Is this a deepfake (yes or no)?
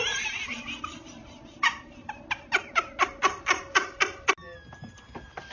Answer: no